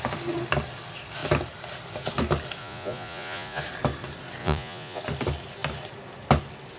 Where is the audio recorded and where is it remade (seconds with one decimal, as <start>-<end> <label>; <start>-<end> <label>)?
0.0-2.6 recorded; 2.6-3.6 remade; 3.6-4.4 recorded; 4.4-5.0 remade; 5.0-6.8 recorded